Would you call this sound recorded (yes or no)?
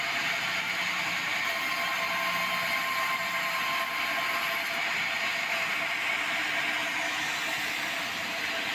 yes